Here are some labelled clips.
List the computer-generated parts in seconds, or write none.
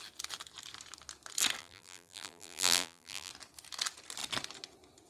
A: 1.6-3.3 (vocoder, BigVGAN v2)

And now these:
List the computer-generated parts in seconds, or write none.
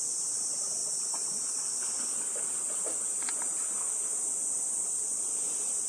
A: 0.8-2.4 (vocoder, BigVGAN v2)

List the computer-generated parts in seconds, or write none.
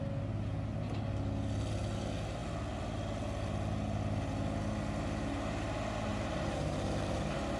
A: 6.1-7.1 (vocoder, BigVGAN v2)